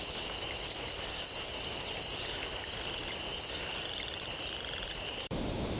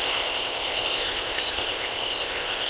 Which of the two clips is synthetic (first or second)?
second